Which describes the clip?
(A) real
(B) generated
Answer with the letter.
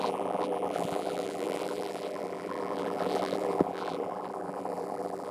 B